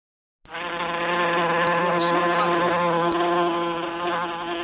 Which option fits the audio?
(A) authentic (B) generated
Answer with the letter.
A